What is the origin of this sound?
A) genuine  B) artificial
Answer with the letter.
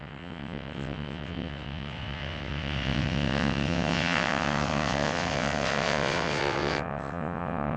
B